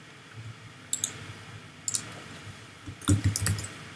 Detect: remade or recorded recorded